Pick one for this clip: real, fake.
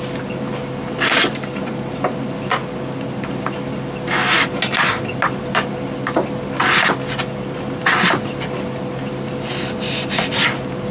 real